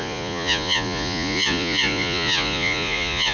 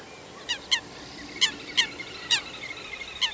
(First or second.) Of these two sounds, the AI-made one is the first